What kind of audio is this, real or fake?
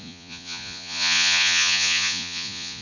fake